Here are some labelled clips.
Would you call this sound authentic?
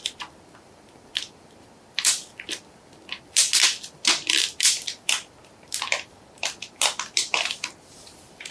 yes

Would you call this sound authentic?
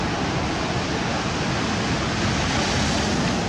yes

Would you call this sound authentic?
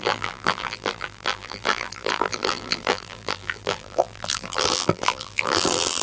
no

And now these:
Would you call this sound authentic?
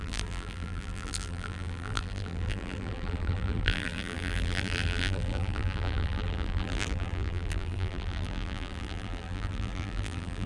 no